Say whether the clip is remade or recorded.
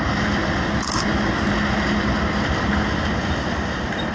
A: recorded